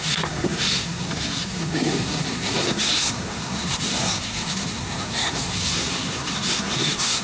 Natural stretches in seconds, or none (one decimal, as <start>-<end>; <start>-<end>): none